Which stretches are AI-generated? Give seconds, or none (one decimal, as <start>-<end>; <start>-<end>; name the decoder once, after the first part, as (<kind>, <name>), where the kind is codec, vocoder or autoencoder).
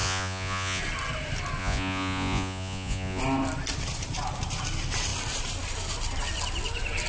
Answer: 0.0-0.8 (vocoder, Vocos); 1.6-3.2